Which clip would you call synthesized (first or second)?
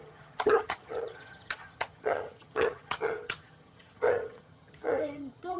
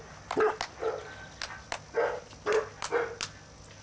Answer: first